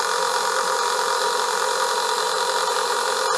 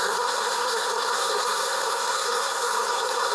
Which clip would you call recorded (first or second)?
first